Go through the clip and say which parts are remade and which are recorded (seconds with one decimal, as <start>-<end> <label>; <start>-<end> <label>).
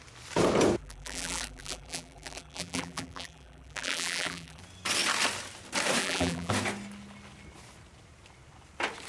0.0-0.8 recorded; 0.8-4.6 remade; 4.6-6.0 recorded; 6.0-6.5 remade; 6.5-9.1 recorded